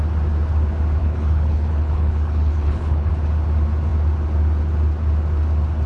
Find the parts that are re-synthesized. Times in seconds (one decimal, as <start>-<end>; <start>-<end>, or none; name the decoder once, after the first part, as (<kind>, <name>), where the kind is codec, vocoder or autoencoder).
1.0-3.1 (codec, HILCodec)